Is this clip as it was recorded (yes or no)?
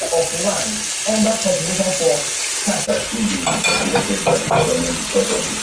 yes